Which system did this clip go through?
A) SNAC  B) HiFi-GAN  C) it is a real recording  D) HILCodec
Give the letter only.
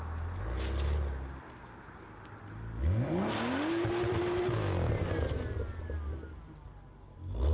C